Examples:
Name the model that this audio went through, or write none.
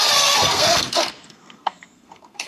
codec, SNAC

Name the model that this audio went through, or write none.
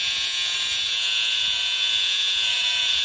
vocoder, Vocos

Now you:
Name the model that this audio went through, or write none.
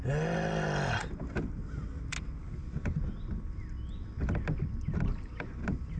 none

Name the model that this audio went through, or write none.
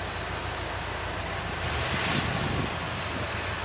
none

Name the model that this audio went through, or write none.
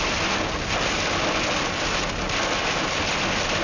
none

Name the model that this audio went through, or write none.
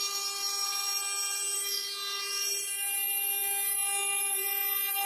none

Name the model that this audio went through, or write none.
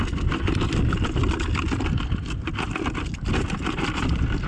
none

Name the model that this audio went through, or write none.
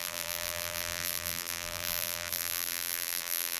vocoder, BigVGAN v2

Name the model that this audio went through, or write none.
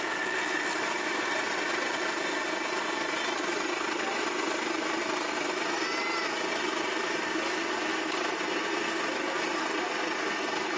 none